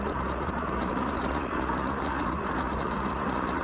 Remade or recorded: remade